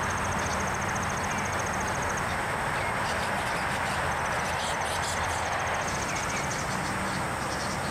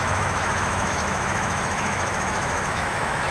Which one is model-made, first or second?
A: second